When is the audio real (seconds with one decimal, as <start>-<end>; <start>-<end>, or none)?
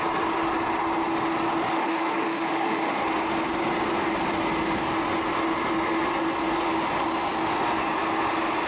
0.0-1.7; 3.0-8.7